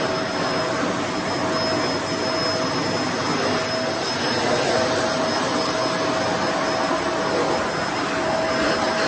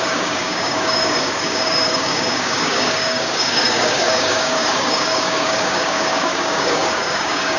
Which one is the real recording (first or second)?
first